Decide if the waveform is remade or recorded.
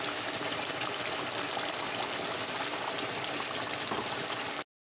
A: recorded